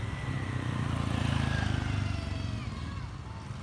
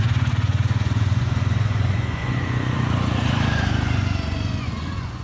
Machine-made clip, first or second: second